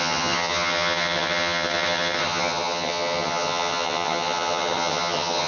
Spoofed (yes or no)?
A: yes